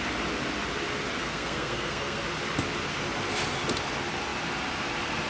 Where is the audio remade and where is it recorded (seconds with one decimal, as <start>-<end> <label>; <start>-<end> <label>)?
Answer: 0.0-1.2 recorded; 1.2-2.2 remade; 2.2-5.3 recorded